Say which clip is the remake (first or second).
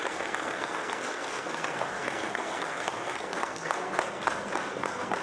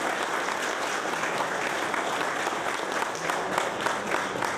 first